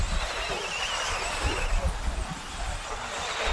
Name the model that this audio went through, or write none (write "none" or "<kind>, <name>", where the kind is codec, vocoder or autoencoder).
none